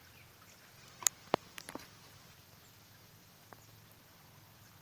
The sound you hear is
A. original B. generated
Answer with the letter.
B